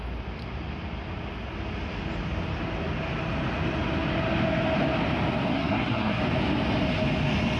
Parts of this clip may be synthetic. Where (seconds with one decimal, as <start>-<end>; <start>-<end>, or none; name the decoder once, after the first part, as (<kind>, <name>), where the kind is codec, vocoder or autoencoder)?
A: 5.5-6.2 (codec, SNAC)